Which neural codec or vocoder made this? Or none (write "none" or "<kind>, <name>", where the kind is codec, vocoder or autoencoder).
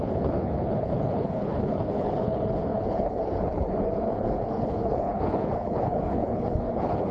codec, HILCodec